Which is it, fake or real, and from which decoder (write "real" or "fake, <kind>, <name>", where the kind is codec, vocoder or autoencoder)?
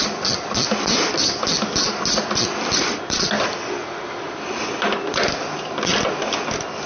real